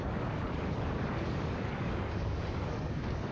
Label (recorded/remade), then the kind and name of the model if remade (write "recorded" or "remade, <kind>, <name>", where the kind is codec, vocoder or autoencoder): remade, codec, DAC